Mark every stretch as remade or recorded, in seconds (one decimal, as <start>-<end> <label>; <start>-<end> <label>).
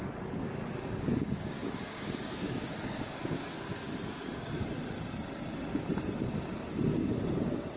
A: 0.0-0.4 recorded; 0.4-4.8 remade; 4.8-6.9 recorded; 6.9-7.8 remade